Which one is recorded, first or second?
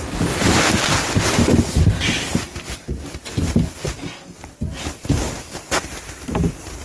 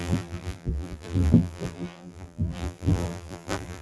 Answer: first